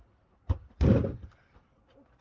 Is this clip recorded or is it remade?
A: recorded